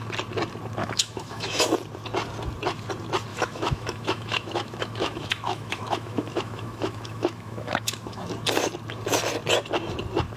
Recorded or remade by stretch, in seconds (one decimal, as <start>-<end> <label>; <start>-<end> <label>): 0.0-0.8 recorded; 0.8-1.7 remade; 1.7-3.3 recorded; 3.3-8.3 remade; 8.3-10.4 recorded